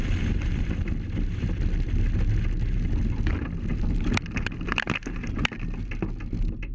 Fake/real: real